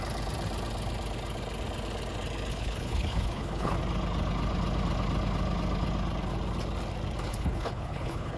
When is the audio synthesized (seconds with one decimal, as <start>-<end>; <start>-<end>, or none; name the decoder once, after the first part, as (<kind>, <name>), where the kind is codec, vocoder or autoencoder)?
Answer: 2.5-3.7 (codec, HILCodec); 7.3-8.4